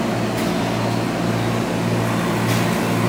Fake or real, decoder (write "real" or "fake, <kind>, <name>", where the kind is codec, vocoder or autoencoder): real